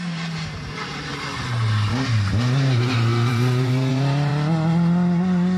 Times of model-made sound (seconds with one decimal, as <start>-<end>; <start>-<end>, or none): 0.0-1.1; 2.3-4.3